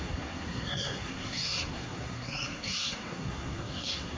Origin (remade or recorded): remade